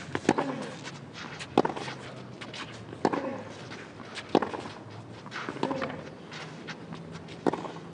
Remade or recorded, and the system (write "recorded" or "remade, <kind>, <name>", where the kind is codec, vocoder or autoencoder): recorded